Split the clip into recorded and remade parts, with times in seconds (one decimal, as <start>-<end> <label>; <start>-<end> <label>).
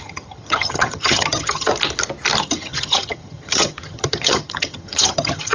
0.0-1.7 remade; 1.7-2.4 recorded; 2.4-5.5 remade